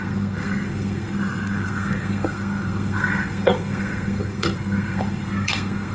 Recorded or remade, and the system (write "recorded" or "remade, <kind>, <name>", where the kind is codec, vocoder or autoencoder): remade, codec, SNAC